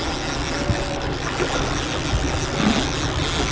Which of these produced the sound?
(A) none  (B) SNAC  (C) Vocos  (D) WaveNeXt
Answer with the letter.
A